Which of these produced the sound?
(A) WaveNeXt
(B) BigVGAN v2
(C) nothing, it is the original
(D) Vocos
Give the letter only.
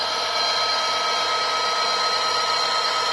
C